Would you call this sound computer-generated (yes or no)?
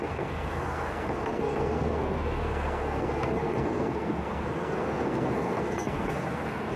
yes